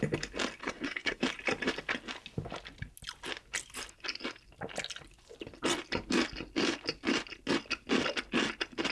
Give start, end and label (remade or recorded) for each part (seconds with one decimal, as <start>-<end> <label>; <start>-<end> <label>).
0.0-0.6 recorded; 0.6-1.2 remade; 1.2-8.9 recorded